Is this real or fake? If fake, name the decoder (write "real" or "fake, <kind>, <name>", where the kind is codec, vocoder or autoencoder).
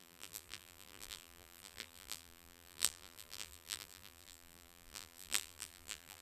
fake, vocoder, BigVGAN v2